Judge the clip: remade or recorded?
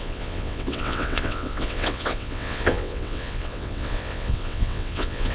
remade